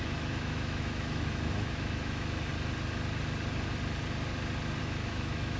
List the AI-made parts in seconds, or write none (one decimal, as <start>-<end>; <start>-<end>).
0.0-2.5; 4.8-5.6

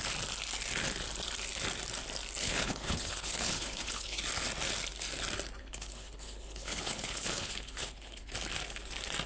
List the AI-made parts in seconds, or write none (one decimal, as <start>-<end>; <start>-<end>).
2.4-4.2; 5.6-8.2